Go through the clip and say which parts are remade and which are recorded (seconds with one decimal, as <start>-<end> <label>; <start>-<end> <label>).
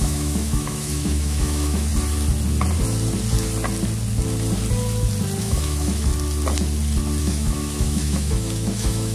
0.0-1.9 remade; 1.9-5.4 recorded; 5.4-6.1 remade; 6.1-7.2 recorded; 7.2-9.1 remade